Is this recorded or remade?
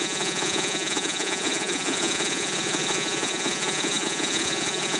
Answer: remade